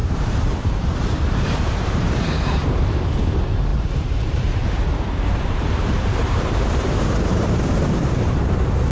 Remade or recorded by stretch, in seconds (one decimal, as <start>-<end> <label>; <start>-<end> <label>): 0.0-3.1 remade; 3.1-3.7 recorded; 3.7-8.5 remade; 8.5-8.9 recorded